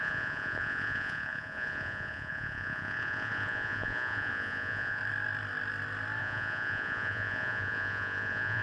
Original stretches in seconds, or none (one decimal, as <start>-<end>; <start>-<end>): 5.0-6.2